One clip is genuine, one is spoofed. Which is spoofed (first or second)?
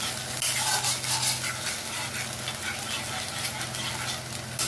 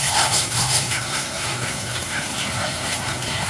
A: second